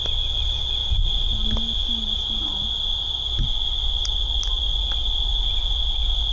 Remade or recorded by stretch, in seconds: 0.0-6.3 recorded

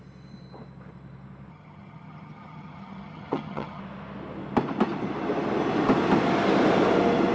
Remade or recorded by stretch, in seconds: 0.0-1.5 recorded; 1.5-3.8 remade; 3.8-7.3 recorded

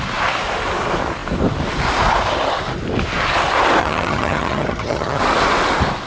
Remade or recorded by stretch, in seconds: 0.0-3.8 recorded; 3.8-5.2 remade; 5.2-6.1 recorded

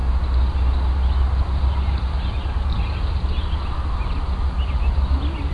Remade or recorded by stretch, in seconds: 0.0-5.5 recorded

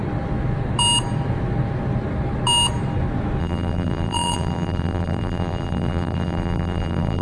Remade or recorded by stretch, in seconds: 0.0-3.4 recorded; 3.4-7.2 remade

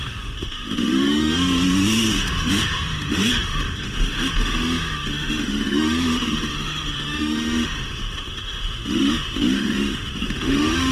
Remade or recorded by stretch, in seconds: 0.0-10.9 remade